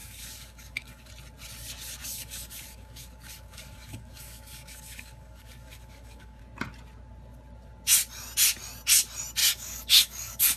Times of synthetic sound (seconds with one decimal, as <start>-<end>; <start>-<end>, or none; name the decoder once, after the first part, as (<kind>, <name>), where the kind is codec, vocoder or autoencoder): 0.0-1.1 (codec, DAC); 2.0-6.4; 9.4-10.6